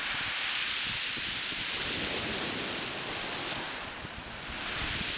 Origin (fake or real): real